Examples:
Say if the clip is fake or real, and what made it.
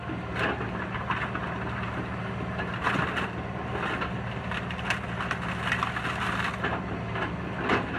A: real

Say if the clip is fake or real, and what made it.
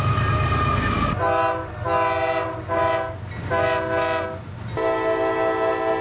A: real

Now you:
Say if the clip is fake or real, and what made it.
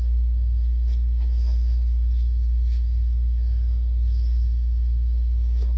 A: fake, codec, SNAC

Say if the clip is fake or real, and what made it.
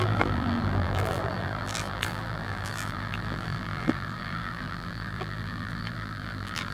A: fake, vocoder, BigVGAN v2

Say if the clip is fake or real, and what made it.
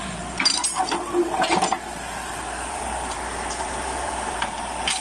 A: fake, vocoder, BigVGAN v2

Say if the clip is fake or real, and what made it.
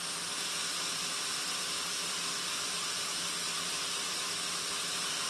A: real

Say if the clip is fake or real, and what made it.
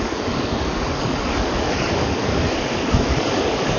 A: fake, codec, DAC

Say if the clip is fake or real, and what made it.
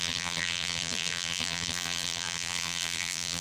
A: fake, vocoder, BigVGAN v2